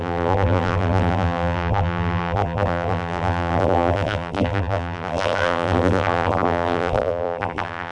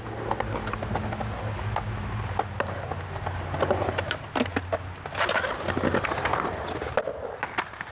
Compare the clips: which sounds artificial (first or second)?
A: first